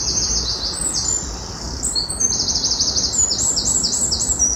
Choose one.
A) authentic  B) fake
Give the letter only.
A